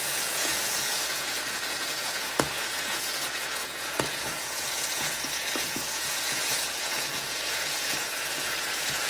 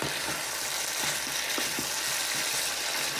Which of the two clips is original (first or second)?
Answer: second